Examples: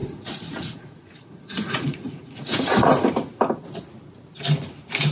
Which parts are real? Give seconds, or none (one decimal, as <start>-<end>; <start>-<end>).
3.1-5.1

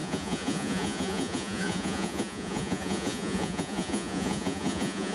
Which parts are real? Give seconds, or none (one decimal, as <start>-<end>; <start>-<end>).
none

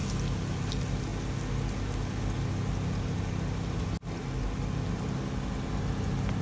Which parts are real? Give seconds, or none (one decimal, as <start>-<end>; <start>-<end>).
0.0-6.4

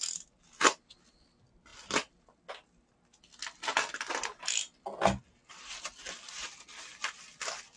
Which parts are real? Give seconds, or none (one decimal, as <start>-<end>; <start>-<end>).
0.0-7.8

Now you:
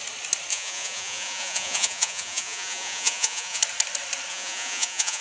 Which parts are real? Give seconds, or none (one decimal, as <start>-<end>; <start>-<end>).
0.0-0.5; 3.6-4.3

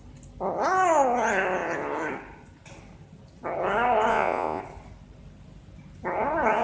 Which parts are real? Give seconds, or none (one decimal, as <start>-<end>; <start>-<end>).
0.0-4.1; 4.6-6.6

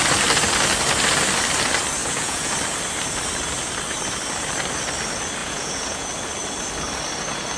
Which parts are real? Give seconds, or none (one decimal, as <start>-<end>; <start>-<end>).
0.0-2.0; 2.5-5.4; 6.1-7.6

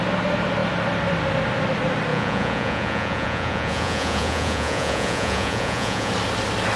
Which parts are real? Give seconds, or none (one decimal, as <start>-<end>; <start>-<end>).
0.0-2.1; 6.1-6.8